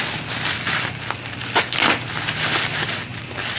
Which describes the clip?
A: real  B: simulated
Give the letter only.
A